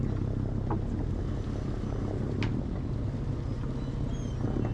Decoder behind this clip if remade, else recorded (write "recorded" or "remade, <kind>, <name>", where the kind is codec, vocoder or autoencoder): recorded